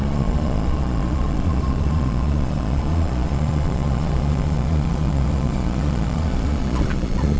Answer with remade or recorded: remade